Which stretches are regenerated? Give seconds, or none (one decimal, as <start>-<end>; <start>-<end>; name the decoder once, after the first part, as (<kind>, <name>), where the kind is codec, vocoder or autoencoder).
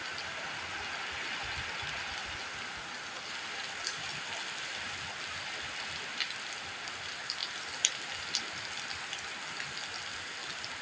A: none